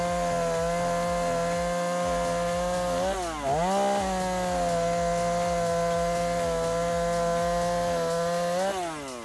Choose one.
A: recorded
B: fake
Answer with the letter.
A